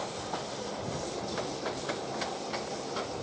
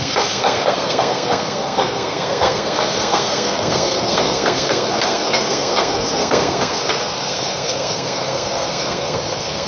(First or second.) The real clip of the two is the first